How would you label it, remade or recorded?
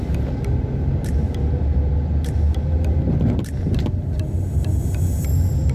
recorded